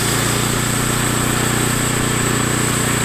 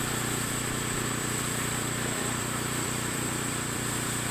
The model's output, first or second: second